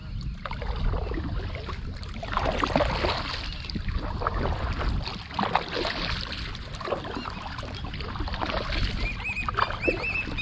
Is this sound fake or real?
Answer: real